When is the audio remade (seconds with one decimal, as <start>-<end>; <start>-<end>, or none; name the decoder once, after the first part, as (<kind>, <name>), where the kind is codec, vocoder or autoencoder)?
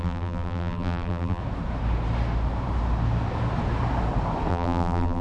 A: 0.0-1.4 (vocoder, BigVGAN v2); 4.5-5.2